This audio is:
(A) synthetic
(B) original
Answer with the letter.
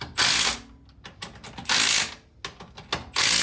B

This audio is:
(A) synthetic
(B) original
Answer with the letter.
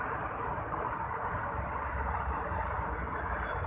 B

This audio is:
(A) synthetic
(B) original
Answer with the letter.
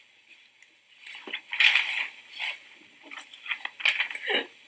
B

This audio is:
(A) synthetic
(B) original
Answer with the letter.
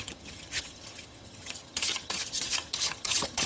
A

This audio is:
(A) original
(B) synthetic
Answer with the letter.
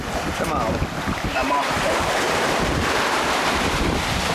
B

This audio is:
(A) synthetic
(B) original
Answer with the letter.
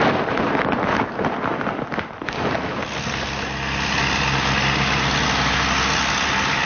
B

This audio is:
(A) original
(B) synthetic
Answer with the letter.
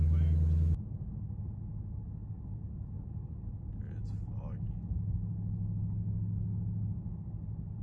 A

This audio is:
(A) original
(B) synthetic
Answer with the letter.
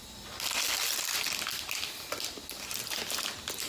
A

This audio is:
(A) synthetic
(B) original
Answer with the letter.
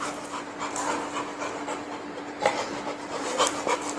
B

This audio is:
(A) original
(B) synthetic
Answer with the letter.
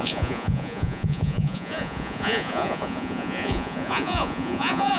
B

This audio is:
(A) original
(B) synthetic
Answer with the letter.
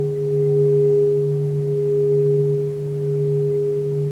A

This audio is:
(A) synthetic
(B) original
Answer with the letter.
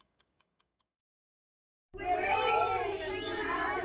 A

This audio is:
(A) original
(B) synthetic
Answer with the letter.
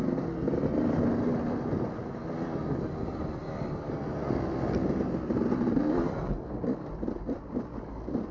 A